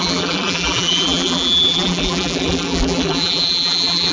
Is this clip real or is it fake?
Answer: fake